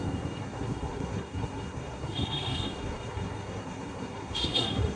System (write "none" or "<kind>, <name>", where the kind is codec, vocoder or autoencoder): codec, SNAC